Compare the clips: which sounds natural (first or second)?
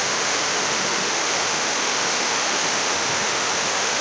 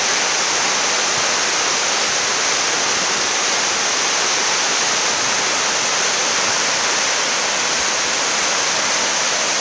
second